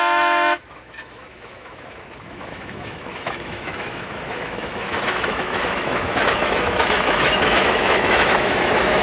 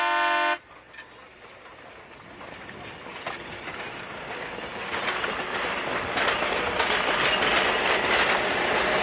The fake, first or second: first